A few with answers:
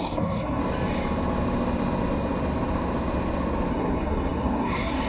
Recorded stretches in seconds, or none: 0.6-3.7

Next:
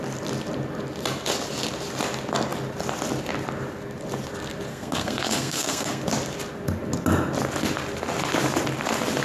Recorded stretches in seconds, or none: 0.0-4.7; 6.0-9.2